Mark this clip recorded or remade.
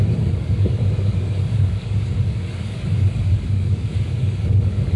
remade